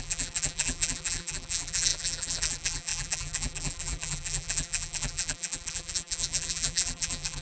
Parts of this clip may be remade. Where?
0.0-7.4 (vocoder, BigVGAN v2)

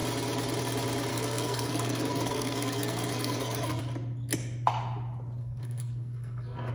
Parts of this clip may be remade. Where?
1.1-3.8 (codec, SNAC); 5.4-6.7